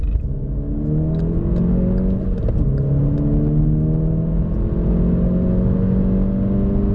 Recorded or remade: recorded